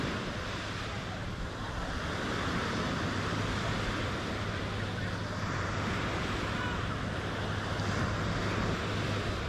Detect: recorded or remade recorded